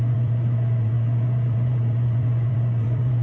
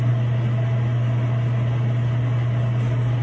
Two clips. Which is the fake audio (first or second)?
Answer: first